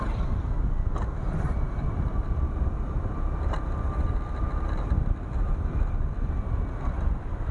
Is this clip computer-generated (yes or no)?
no